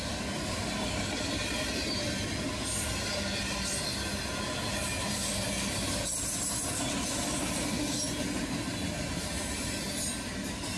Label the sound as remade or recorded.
recorded